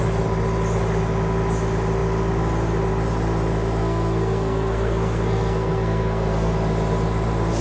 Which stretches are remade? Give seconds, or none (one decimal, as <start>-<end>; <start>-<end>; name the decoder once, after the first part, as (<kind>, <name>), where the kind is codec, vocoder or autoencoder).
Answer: 3.8-6.5 (codec, SNAC)